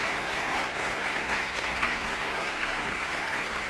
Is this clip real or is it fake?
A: fake